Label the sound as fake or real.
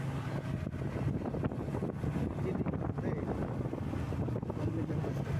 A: real